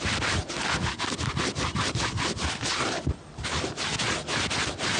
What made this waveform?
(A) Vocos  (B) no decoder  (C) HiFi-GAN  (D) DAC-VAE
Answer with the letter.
B